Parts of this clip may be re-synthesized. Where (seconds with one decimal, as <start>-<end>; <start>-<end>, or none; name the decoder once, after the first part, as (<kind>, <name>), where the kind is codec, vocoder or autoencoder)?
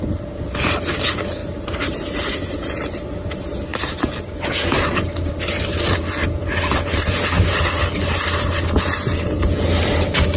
1.4-3.0 (vocoder, BigVGAN v2); 3.7-5.4; 6.4-7.7